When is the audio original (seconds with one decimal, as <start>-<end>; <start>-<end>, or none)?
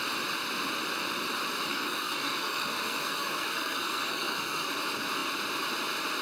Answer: 0.0-1.7; 4.7-6.2